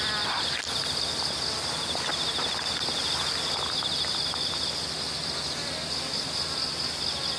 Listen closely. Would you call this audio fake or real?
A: real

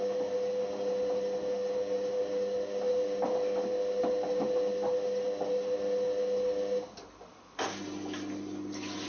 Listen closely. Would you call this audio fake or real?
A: real